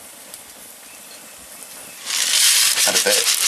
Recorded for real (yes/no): yes